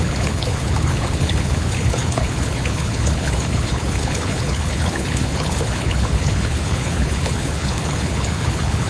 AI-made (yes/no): yes